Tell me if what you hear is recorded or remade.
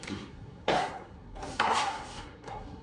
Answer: remade